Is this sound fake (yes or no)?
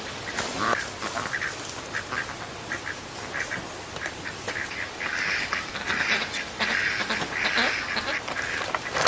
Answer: no